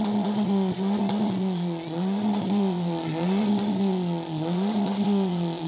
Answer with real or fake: fake